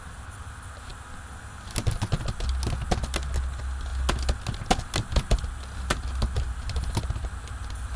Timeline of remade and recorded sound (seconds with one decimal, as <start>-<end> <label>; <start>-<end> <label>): 0.0-8.0 recorded